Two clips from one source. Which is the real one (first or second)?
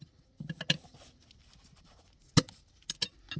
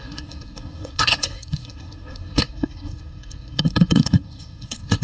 first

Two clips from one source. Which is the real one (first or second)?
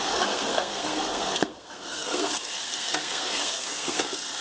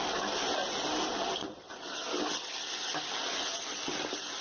second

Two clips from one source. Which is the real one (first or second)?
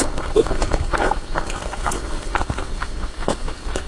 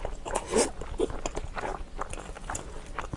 second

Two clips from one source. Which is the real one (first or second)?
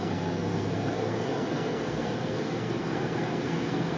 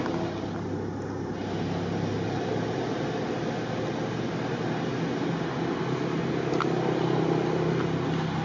second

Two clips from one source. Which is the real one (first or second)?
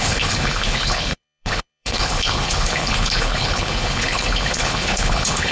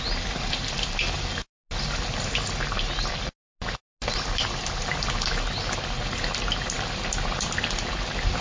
second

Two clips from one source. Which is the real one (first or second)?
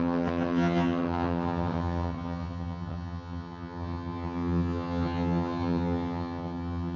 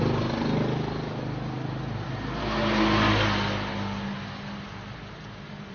second